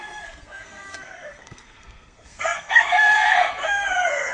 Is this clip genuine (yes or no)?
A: no